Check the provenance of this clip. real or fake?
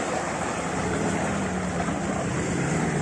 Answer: real